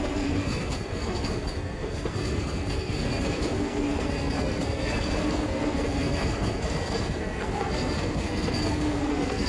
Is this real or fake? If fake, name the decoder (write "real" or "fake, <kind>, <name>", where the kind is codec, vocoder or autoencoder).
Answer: fake, codec, SNAC